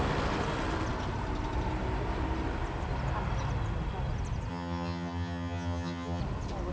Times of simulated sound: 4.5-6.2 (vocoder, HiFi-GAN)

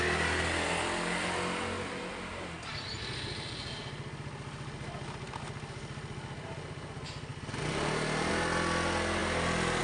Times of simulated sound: none